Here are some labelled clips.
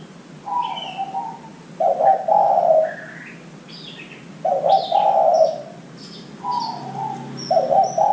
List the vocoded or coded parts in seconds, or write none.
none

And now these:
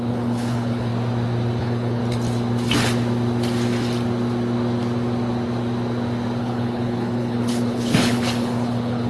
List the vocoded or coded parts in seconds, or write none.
0.0-0.9 (codec, HILCodec); 1.6-2.0; 6.4-9.1

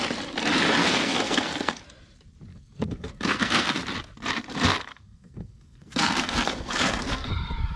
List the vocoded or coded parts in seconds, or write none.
0.8-1.8 (codec, SNAC); 2.5-3.8; 4.7-7.3

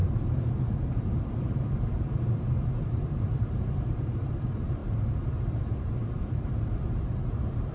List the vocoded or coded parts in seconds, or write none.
0.0-7.7 (vocoder, BigVGAN v2)